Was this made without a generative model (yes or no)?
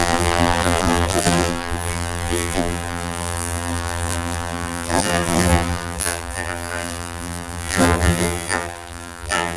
no